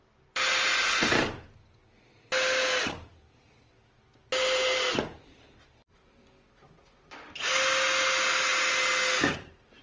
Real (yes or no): yes